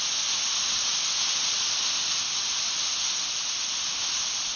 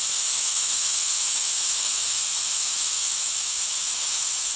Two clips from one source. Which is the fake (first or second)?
second